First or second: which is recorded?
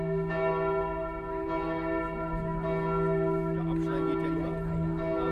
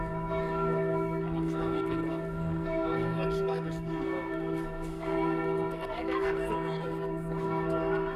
first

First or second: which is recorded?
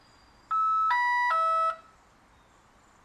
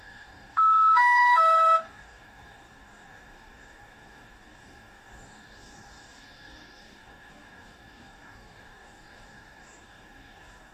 first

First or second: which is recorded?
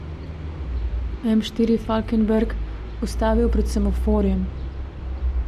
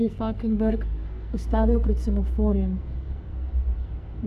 first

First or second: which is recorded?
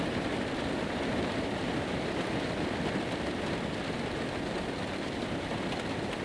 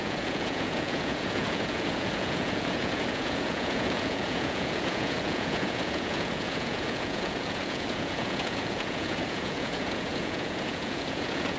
first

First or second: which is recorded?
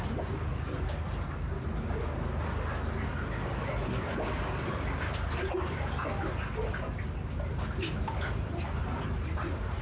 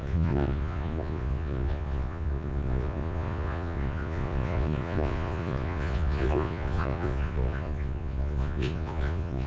first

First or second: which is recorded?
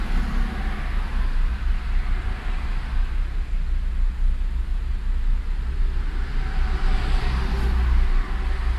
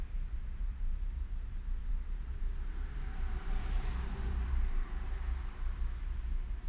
first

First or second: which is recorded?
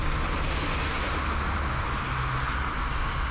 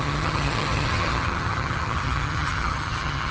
first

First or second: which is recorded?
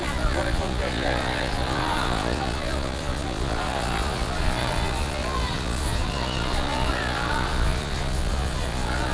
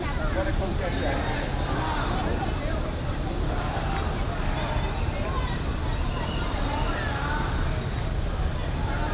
second